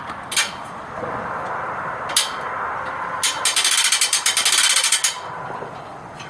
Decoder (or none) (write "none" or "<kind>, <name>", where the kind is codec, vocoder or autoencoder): none